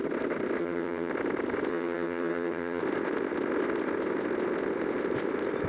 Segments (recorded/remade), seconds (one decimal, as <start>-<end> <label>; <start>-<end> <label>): 0.0-0.6 recorded; 0.6-1.1 remade; 1.1-1.7 recorded; 1.7-2.8 remade; 2.8-5.7 recorded